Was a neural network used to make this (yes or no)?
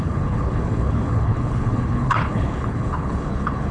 yes